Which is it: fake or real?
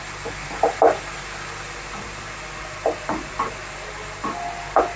real